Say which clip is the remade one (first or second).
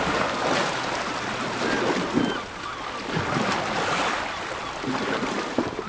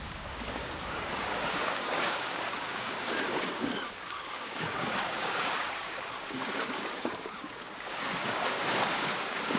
second